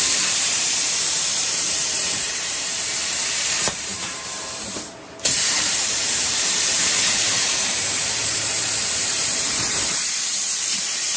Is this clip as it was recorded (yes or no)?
no